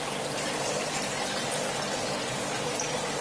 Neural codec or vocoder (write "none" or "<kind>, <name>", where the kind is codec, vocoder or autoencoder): none